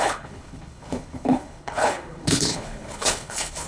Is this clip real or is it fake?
fake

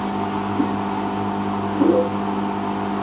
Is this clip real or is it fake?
real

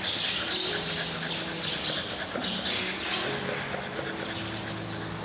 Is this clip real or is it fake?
real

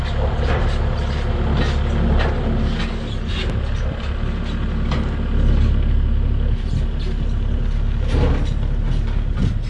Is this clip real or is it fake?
real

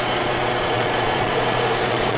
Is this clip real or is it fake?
fake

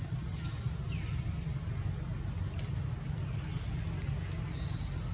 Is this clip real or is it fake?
real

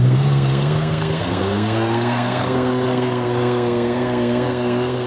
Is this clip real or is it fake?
fake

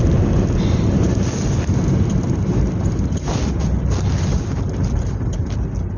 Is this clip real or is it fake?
real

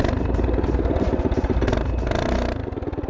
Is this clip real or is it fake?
real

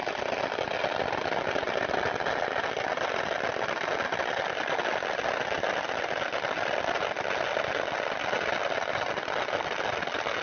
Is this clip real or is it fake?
real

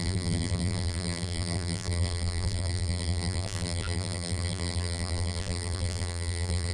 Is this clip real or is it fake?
fake